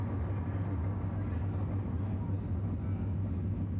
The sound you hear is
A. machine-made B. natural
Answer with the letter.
B